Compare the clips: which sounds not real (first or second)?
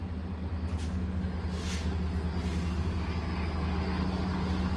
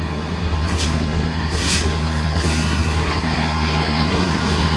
second